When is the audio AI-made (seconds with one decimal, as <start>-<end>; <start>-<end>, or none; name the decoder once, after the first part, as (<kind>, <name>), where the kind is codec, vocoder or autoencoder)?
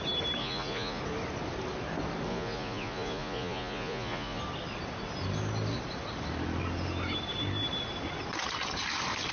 0.4-1.0 (vocoder, Vocos); 2.3-4.4